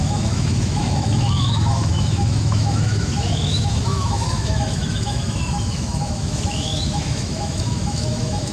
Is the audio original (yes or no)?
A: no